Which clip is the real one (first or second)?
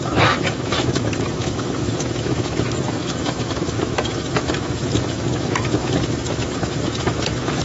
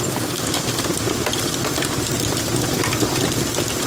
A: second